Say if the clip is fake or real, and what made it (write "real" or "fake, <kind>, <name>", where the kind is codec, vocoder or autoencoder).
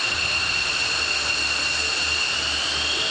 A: real